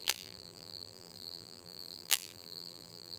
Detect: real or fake fake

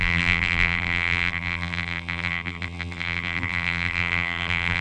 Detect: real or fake fake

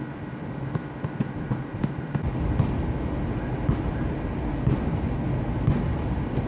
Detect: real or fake real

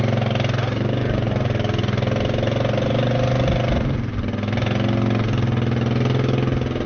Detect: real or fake real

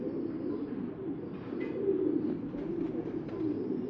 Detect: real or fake real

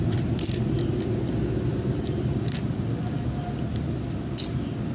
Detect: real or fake real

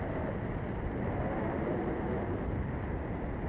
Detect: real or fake real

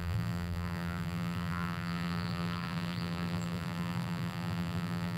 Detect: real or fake fake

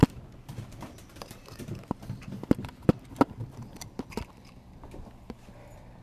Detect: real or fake fake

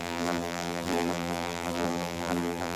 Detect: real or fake fake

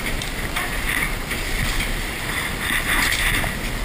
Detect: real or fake fake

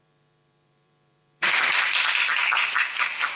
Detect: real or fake fake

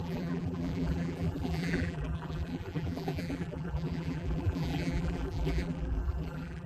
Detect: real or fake fake